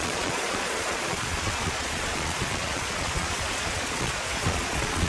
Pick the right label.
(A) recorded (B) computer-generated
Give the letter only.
B